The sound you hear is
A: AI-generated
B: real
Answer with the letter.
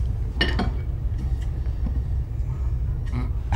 B